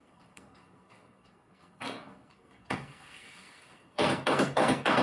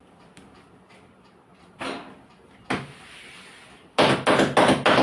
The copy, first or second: first